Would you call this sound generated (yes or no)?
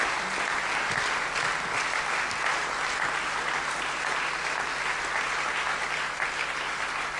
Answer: no